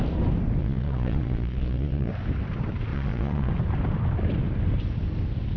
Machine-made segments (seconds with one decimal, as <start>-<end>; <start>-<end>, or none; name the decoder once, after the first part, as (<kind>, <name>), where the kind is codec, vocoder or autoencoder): 0.6-2.1 (vocoder, Vocos); 2.9-3.5

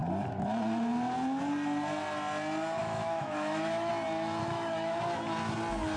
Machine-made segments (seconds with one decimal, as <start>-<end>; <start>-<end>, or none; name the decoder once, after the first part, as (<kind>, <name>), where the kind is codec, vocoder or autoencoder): 2.8-3.9 (autoencoder, DAC-VAE); 4.4-5.0

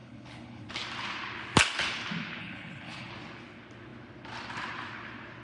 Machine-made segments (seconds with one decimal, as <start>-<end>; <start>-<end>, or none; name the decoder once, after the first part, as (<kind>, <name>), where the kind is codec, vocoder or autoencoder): 0.0-0.7 (codec, HILCodec); 2.4-3.1